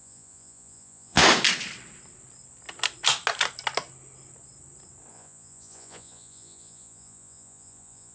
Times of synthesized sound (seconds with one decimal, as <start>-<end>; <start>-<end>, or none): 0.0-1.2; 5.1-8.1